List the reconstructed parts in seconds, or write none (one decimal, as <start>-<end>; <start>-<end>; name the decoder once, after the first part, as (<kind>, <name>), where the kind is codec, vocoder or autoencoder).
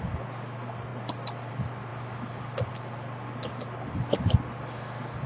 none